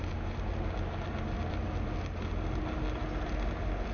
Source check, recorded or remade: recorded